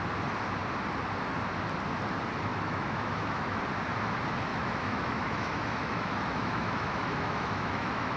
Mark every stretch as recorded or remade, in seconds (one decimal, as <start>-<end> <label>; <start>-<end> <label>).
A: 0.0-2.5 recorded; 2.5-3.6 remade; 3.6-4.5 recorded; 4.5-8.2 remade